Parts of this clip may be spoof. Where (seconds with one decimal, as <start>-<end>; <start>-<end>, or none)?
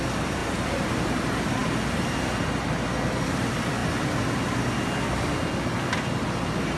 none